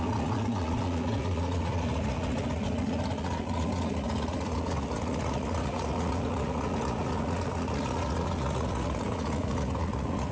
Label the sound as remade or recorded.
remade